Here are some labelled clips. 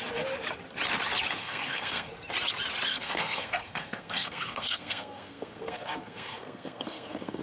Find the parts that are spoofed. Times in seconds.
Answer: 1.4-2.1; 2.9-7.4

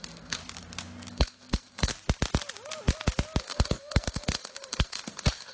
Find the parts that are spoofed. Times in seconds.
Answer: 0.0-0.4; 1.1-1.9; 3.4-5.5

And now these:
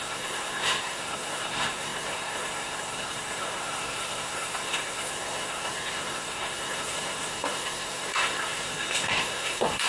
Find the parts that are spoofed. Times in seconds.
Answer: 0.0-9.9